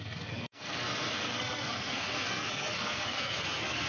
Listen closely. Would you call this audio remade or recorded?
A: remade